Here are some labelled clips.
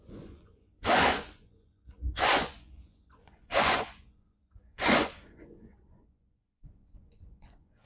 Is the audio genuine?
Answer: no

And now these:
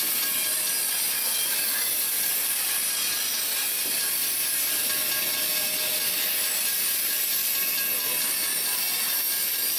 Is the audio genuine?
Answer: yes